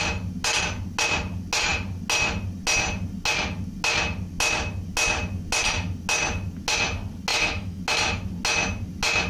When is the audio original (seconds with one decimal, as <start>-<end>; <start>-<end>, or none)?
0.0-7.3; 7.8-9.3